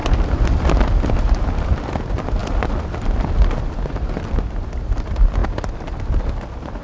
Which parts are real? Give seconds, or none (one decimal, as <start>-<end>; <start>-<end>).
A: 0.0-6.8